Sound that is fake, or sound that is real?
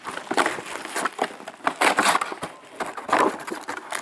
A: real